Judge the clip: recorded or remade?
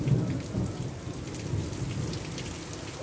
recorded